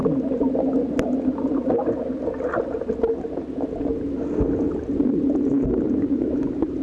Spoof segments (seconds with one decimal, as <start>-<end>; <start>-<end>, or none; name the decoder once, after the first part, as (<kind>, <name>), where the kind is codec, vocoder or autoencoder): none

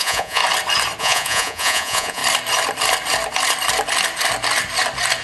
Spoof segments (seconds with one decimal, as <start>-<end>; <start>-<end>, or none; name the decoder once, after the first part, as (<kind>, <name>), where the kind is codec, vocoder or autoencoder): 0.0-0.4 (vocoder, Vocos); 1.0-2.2

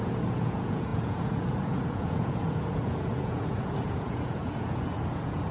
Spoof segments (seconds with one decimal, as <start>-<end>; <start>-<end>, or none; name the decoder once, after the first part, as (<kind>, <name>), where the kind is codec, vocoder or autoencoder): 0.0-5.5 (vocoder, Vocos)

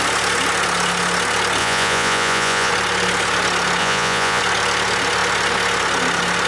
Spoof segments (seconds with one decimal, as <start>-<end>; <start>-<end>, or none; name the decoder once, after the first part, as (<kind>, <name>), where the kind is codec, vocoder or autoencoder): 1.6-2.7 (vocoder, Vocos); 3.8-4.4